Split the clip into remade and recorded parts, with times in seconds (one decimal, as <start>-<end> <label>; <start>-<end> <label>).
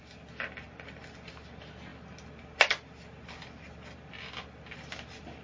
0.0-5.4 recorded